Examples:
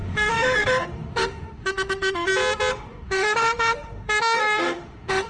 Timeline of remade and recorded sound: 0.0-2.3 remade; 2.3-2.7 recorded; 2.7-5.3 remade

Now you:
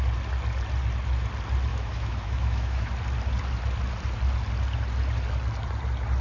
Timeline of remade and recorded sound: 0.0-1.7 recorded; 1.7-2.9 remade; 2.9-6.2 recorded